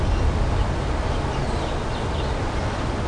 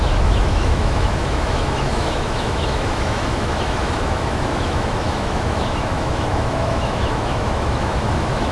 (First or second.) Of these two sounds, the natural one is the first